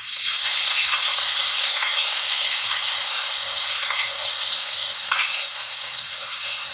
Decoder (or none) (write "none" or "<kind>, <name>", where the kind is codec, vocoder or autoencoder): codec, SNAC